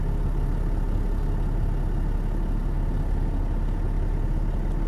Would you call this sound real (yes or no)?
yes